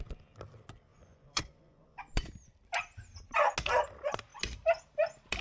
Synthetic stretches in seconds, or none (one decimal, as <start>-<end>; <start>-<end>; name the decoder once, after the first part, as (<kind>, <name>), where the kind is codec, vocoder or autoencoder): 0.9-2.0 (vocoder, Vocos)

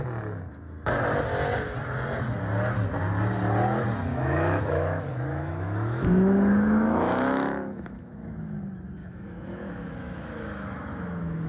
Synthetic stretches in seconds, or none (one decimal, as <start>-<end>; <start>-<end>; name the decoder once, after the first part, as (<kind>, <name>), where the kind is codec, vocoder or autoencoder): 4.1-8.6 (autoencoder, DAC-VAE); 9.0-11.5